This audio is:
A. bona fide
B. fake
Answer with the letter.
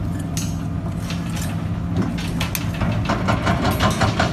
A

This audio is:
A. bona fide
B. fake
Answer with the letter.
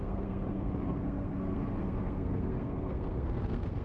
B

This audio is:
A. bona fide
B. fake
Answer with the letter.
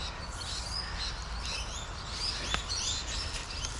A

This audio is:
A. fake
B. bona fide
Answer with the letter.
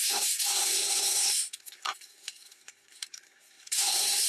A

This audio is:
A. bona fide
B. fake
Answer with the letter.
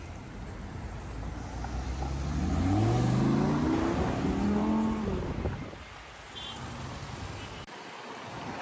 A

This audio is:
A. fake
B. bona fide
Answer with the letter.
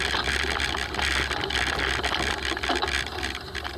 B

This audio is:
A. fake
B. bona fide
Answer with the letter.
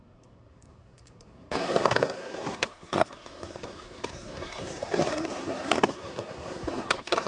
A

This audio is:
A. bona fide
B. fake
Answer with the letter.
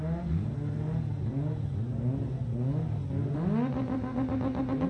A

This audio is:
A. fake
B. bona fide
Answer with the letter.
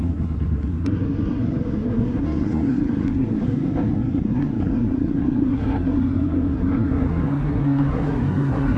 A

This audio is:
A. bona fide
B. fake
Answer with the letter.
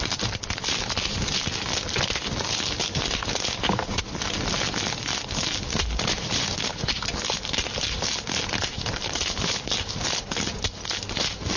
A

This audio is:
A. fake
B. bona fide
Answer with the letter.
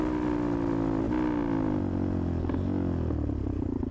B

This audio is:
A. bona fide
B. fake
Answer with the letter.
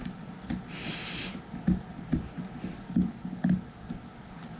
A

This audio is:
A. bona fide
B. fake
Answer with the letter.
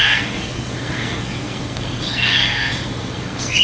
B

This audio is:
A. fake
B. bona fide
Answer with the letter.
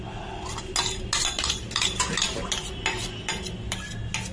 B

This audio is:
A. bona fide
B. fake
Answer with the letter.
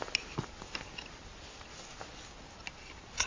A